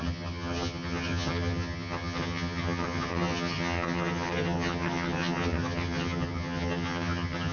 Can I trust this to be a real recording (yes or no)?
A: no